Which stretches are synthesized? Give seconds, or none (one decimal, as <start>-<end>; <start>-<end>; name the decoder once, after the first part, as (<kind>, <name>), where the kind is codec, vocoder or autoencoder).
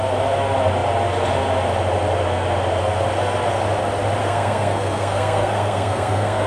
4.2-6.5 (codec, SNAC)